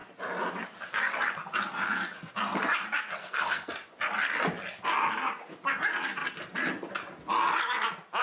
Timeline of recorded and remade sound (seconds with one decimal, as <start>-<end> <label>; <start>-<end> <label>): 0.0-3.2 recorded; 3.2-3.7 remade; 3.7-8.2 recorded